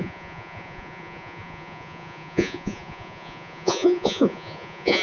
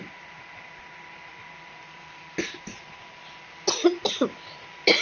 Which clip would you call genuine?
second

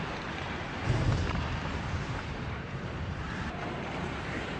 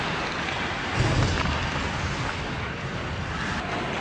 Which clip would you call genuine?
second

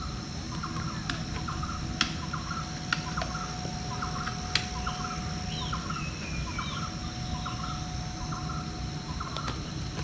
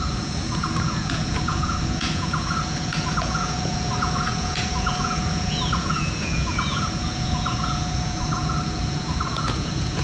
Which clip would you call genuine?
first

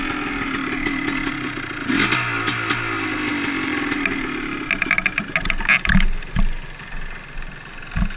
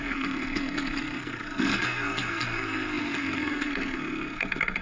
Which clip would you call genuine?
first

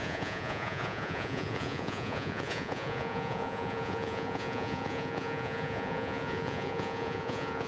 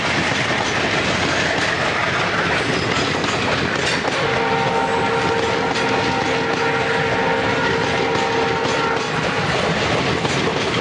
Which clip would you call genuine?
second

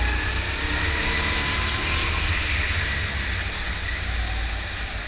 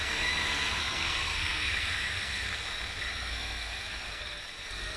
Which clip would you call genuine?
first